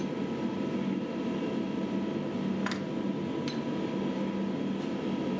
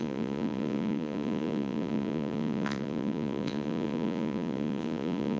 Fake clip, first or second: second